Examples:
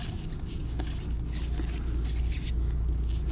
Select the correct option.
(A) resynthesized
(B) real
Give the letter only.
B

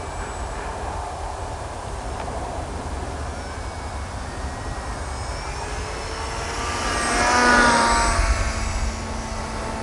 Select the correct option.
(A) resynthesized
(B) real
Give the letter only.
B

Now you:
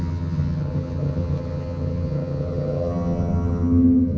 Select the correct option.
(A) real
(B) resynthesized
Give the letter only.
B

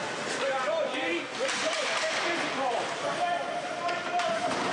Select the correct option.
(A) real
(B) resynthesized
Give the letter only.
B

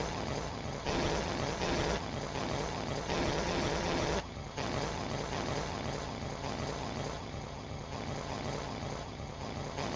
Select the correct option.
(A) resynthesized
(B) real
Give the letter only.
A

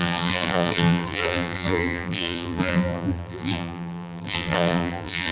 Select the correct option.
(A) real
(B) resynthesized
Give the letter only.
B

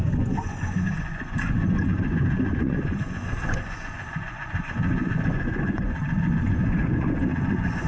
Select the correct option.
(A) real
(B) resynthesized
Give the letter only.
B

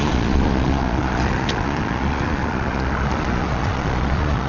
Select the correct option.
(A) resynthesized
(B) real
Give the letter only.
A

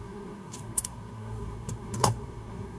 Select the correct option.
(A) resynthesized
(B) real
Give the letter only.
A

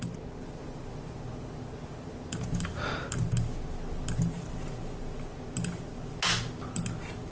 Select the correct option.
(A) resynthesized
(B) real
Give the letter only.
B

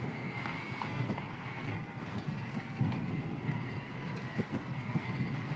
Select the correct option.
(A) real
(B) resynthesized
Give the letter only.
B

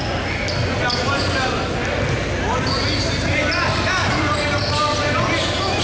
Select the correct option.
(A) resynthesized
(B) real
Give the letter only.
B